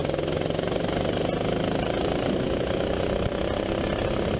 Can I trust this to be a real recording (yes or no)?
yes